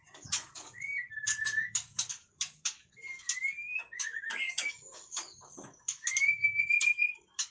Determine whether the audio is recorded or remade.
remade